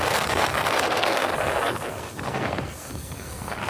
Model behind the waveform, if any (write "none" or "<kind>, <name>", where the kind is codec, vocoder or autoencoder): codec, SNAC